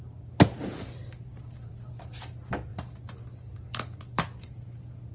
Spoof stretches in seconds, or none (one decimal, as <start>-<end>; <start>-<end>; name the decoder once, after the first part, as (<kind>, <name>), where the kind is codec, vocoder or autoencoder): 1.3-1.9 (vocoder, BigVGAN v2)